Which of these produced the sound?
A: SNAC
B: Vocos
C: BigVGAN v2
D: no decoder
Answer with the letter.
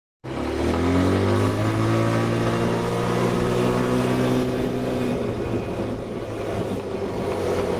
D